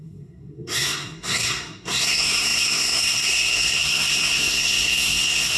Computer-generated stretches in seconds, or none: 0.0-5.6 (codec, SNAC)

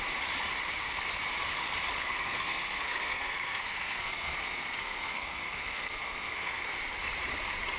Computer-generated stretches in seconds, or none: 2.0-6.7 (codec, SNAC)

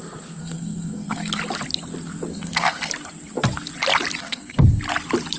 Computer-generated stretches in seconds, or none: 0.4-1.4 (codec, SNAC); 2.3-2.9; 4.2-4.8

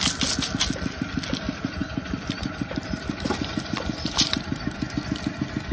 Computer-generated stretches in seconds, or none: 1.8-5.0 (vocoder, BigVGAN v2)

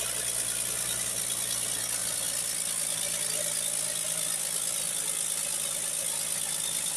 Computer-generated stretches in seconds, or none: none